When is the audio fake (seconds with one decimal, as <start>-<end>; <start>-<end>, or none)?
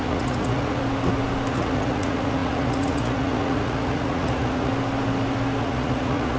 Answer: 0.0-0.8; 1.5-4.7; 5.6-6.4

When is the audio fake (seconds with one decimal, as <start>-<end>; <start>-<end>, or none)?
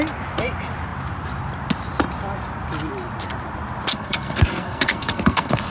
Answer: 3.9-5.7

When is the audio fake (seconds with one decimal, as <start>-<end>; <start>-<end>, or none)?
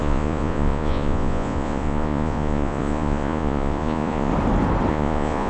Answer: 0.0-4.3; 4.9-5.5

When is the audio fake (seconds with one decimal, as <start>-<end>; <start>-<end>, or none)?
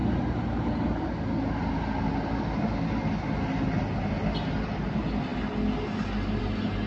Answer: none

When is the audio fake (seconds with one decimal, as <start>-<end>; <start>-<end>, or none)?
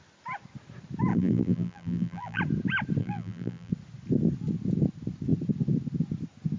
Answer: 1.1-2.4; 3.0-3.7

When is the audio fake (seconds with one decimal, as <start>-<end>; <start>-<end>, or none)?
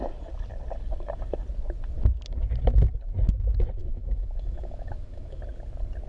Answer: 3.8-5.4